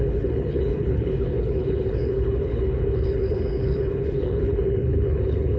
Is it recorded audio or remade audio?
remade